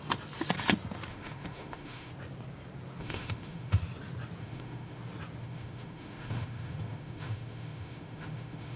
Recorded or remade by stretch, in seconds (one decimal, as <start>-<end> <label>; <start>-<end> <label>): 0.0-1.1 recorded; 1.1-2.1 remade; 2.1-3.0 recorded; 3.0-3.8 remade; 3.8-4.4 recorded; 4.4-5.0 remade; 5.0-5.4 recorded; 5.4-8.8 remade